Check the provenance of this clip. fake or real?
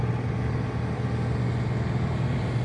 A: real